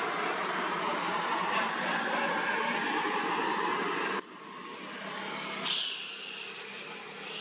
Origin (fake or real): real